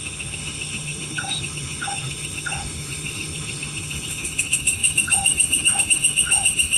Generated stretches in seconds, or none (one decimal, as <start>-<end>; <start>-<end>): 0.0-6.8